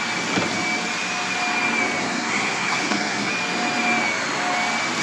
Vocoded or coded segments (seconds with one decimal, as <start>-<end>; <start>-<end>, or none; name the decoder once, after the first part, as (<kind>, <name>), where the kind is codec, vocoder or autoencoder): 2.0-3.3 (codec, SNAC)